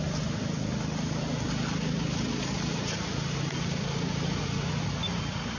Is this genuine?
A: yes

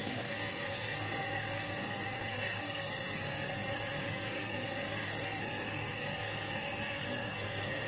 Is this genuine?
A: no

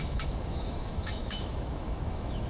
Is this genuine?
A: no